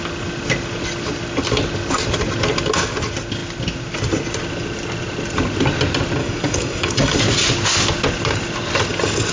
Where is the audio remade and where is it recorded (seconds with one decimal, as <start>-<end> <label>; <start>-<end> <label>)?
0.0-6.2 recorded; 6.2-7.2 remade; 7.2-9.3 recorded